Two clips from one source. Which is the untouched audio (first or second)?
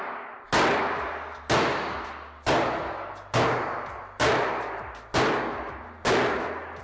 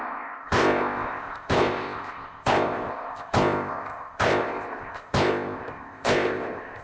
first